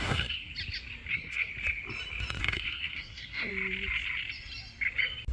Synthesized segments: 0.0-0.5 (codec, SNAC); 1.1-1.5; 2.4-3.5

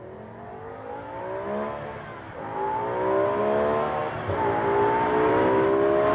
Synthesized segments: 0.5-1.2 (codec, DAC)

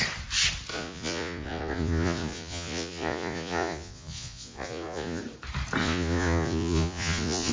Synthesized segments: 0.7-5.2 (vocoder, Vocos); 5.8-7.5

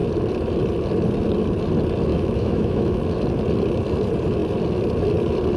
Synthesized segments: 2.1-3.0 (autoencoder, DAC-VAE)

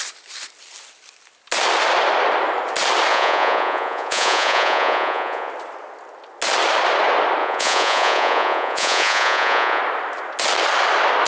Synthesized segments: 3.1-5.5 (vocoder, Vocos); 7.4-9.8

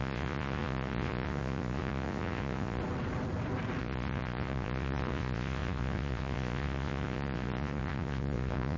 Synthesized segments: 0.0-2.8 (vocoder, Vocos); 3.8-8.8